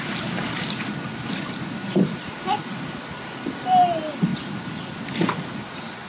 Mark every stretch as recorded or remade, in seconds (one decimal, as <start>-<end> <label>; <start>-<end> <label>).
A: 0.0-6.1 recorded